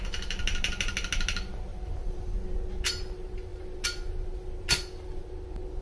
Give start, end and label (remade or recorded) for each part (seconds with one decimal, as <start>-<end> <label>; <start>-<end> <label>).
0.0-1.7 recorded; 1.7-2.3 remade; 2.3-5.8 recorded